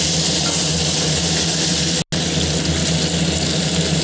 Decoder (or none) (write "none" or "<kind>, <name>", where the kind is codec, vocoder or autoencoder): none